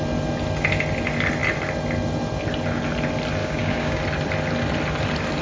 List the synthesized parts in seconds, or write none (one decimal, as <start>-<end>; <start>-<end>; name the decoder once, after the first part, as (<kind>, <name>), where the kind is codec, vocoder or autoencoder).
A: 3.4-4.0 (codec, DAC)